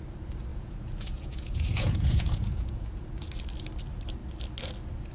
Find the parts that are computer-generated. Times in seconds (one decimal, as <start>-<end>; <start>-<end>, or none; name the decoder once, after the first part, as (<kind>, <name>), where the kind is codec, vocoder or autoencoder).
0.5-3.3 (vocoder, Vocos)